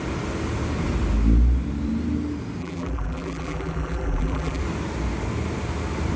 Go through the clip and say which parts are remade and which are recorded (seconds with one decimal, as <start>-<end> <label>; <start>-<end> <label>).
0.0-2.6 recorded; 2.6-4.6 remade; 4.6-6.2 recorded